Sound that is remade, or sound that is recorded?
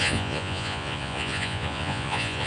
remade